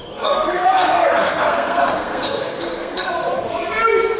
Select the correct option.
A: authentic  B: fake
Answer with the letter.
B